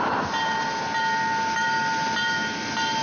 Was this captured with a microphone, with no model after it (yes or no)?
yes